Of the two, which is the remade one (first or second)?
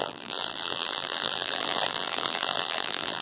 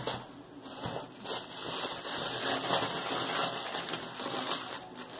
first